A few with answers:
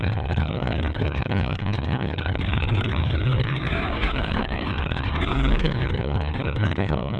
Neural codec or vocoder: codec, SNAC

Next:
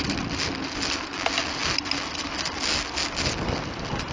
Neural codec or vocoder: none